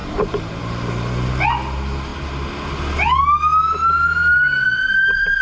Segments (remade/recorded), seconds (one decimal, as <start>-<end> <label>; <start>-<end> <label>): 0.0-0.6 remade; 0.6-5.4 recorded